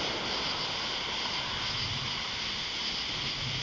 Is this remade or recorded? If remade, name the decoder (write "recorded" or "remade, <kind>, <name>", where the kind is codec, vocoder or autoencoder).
recorded